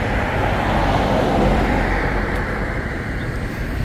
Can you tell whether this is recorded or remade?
remade